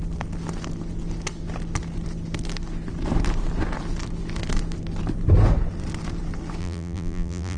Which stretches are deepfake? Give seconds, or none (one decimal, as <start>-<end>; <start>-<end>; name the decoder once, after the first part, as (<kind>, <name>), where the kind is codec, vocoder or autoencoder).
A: 6.6-7.6 (vocoder, BigVGAN v2)